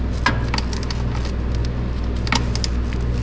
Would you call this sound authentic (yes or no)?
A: yes